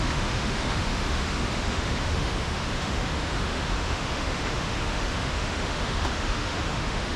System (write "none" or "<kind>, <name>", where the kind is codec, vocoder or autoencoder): autoencoder, DAC-VAE